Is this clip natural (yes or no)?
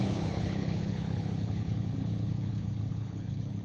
no